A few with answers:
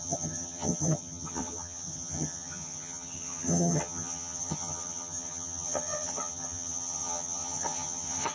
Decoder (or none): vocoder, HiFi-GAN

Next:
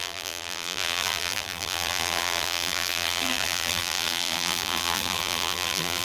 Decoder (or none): vocoder, BigVGAN v2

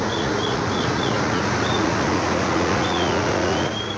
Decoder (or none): vocoder, Vocos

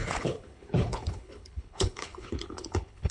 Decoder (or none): codec, HILCodec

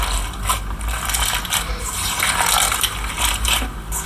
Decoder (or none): none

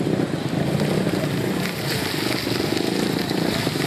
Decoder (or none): none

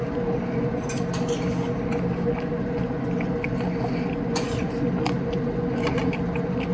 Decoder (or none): none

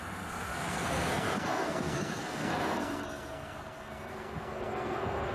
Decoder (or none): codec, SNAC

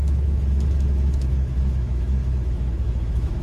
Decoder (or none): autoencoder, DAC-VAE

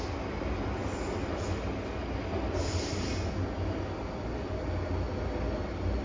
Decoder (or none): none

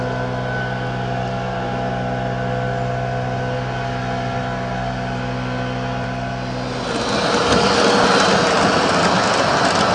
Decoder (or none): none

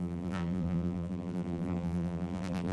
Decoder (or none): vocoder, BigVGAN v2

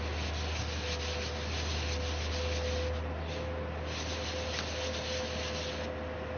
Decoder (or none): none